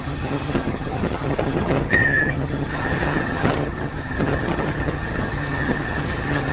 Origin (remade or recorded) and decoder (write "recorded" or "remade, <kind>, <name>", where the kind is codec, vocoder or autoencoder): remade, vocoder, HiFi-GAN